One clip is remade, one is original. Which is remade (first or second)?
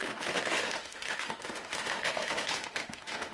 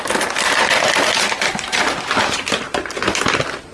first